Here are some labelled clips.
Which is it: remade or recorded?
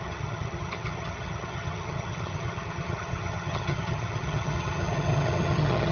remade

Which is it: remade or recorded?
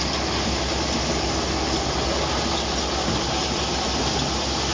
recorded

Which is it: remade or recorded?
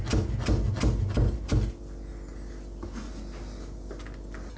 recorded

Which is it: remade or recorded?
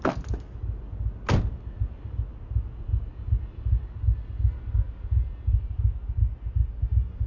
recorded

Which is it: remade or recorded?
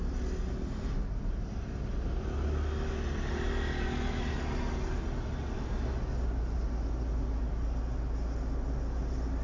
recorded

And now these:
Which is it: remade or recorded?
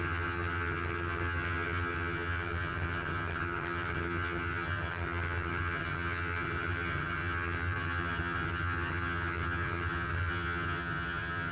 remade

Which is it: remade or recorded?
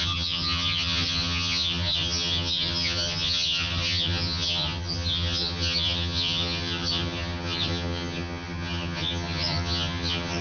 remade